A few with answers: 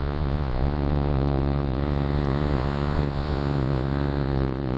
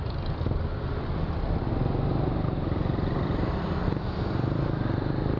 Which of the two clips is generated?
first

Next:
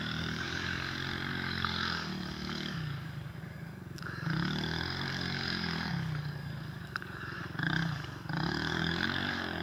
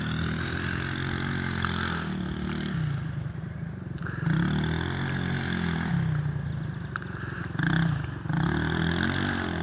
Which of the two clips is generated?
first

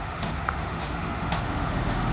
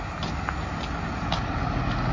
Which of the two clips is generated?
first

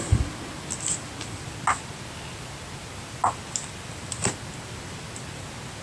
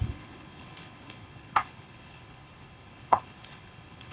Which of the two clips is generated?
second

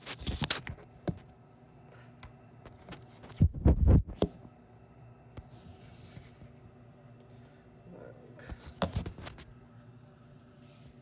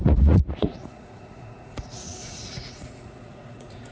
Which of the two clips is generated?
second